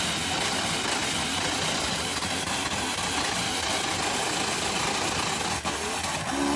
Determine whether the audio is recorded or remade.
recorded